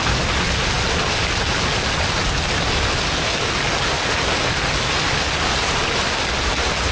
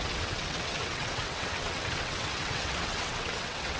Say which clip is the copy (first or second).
second